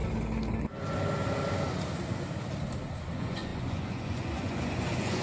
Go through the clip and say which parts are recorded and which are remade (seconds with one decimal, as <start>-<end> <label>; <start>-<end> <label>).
0.0-3.1 recorded; 3.1-5.2 remade